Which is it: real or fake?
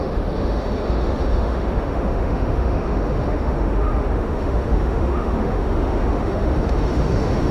fake